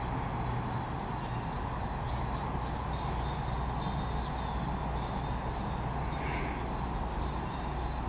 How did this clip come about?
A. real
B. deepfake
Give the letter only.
A